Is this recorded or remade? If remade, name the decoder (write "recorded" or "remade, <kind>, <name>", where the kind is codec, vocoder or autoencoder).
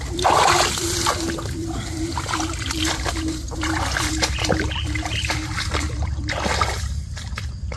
remade, vocoder, BigVGAN v2